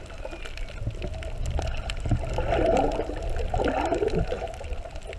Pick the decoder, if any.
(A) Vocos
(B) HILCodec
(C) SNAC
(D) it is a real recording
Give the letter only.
D